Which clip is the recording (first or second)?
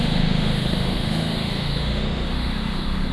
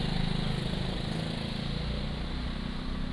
second